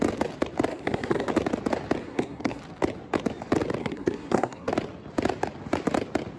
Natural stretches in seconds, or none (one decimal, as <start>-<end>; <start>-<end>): 0.0-0.7; 1.3-2.0; 2.6-3.8; 4.7-6.4